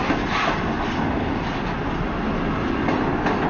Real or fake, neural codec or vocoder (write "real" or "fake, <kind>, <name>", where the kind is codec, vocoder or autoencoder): real